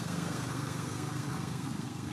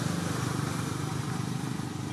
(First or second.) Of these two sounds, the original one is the second